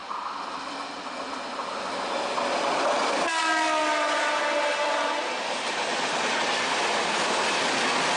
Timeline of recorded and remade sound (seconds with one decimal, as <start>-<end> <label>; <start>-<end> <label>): 0.0-8.2 recorded